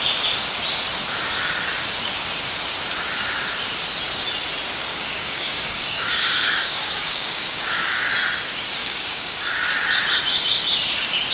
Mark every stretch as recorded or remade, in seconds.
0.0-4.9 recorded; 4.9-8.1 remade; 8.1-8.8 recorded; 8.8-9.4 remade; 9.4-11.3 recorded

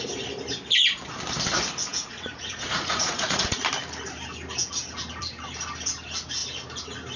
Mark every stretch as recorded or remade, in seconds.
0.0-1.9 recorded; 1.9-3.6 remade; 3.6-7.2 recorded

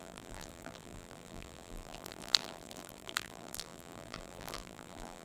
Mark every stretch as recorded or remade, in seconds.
0.0-5.2 remade

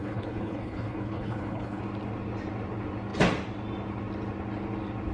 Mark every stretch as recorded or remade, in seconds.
0.0-1.8 remade; 1.8-5.1 recorded

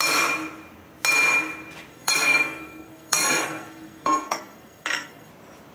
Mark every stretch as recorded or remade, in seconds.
0.0-1.9 recorded; 1.9-5.3 remade; 5.3-5.7 recorded

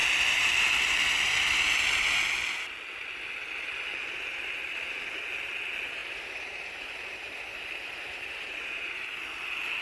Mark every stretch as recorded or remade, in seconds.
0.0-6.0 recorded; 6.0-9.2 remade; 9.2-9.8 recorded